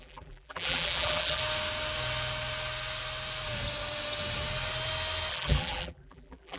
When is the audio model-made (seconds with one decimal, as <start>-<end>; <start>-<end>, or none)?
0.0-1.4; 5.3-6.6